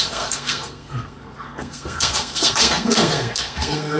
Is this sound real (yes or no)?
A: no